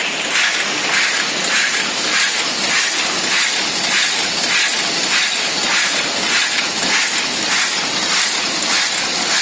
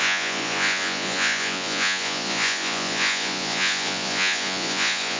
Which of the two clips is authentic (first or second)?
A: first